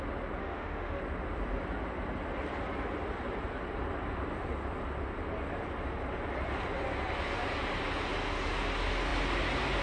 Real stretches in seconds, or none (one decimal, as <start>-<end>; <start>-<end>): 0.0-0.4; 1.0-9.8